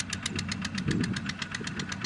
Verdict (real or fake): real